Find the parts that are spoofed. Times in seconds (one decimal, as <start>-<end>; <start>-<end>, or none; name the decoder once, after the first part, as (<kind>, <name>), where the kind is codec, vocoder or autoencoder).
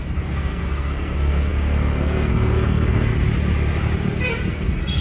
0.0-3.1 (codec, SNAC); 4.5-5.0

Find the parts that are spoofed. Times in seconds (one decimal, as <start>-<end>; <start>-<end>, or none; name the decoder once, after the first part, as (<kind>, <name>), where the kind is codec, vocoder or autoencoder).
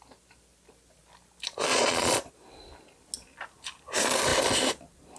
1.7-2.3 (vocoder, Vocos)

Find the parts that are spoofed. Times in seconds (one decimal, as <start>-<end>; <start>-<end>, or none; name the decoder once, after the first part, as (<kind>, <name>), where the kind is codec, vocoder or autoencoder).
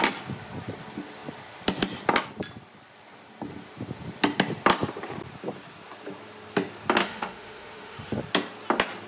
7.0-8.2 (autoencoder, DAC-VAE)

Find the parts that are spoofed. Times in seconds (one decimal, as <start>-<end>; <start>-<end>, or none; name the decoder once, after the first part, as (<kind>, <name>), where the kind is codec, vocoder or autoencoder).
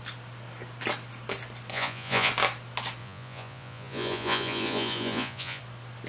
1.7-2.3 (vocoder, Vocos); 3.0-5.6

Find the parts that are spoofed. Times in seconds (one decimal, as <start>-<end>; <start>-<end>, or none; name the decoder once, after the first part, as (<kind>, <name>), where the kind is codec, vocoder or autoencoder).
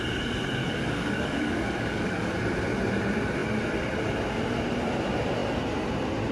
0.6-2.3 (codec, DAC)